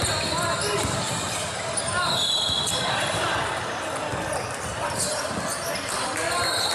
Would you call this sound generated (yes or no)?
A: no